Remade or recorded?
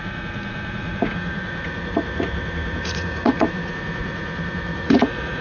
remade